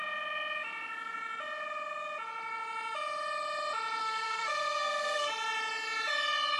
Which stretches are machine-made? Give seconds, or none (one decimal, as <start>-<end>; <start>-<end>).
4.0-5.3